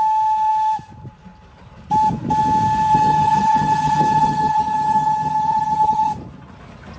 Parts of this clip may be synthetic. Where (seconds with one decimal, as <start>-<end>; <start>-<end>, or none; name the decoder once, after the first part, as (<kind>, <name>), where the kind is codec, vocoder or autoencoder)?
2.9-6.1 (vocoder, HiFi-GAN)